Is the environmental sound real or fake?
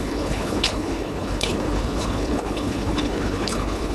fake